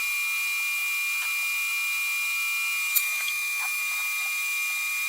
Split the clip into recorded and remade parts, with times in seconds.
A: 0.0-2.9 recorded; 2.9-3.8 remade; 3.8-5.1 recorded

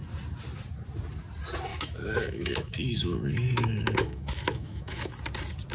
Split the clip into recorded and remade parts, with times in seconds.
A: 0.0-1.7 recorded; 1.7-5.1 remade; 5.1-5.7 recorded

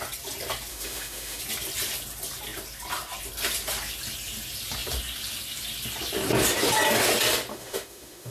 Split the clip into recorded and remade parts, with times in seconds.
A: 0.0-0.7 recorded; 0.7-1.4 remade; 1.4-7.5 recorded; 7.5-8.3 remade

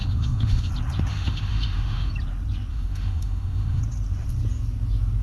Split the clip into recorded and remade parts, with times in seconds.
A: 0.0-0.7 remade; 0.7-1.1 recorded; 1.1-2.1 remade; 2.1-2.7 recorded; 2.7-3.8 remade; 3.8-5.2 recorded

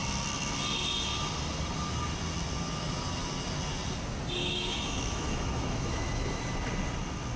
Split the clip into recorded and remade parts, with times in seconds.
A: 0.0-4.4 recorded; 4.4-6.4 remade; 6.4-7.4 recorded